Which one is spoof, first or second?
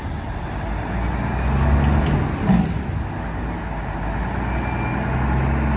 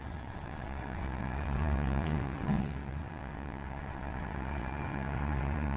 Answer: second